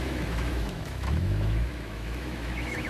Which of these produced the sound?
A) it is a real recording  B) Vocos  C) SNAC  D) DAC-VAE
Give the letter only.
D